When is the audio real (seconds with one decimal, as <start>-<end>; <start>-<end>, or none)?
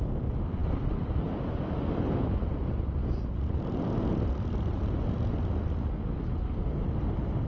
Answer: 0.0-7.5